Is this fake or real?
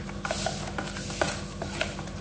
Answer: real